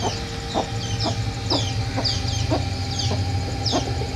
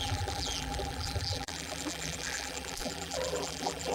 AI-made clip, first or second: second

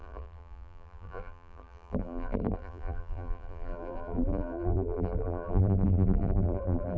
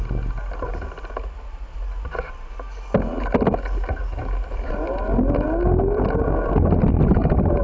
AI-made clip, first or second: first